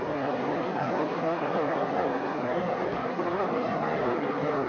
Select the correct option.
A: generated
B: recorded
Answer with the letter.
A